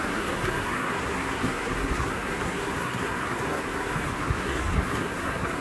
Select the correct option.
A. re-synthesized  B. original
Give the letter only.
A